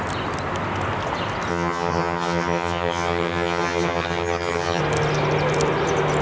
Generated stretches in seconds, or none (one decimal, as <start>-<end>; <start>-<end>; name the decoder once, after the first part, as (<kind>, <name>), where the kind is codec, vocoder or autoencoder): 1.5-4.8 (vocoder, HiFi-GAN)